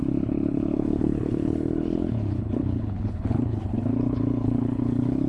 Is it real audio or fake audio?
fake